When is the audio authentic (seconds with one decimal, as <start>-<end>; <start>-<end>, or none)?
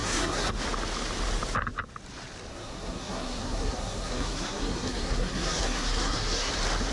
0.5-2.5; 6.5-6.9